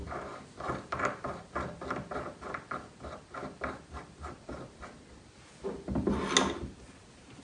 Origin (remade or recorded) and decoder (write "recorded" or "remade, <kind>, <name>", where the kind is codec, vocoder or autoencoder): recorded